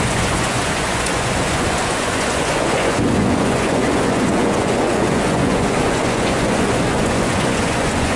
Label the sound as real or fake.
fake